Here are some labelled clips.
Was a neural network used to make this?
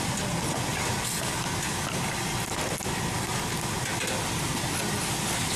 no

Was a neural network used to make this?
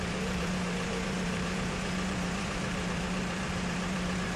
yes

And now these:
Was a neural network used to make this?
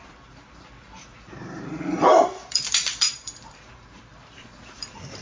yes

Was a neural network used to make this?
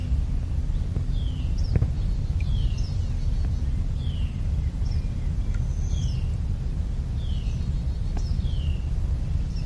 no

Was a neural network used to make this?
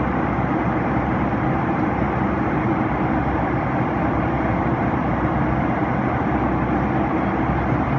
no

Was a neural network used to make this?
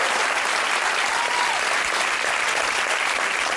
yes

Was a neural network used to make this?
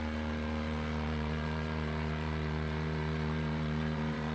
yes